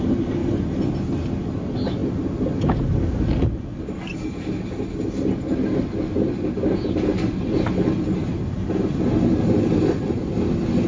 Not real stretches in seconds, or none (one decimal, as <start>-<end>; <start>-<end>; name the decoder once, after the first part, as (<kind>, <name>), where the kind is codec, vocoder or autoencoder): none